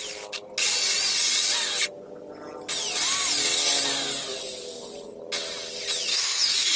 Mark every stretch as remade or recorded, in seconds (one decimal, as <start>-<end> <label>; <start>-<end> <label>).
0.0-6.1 recorded; 6.1-6.8 remade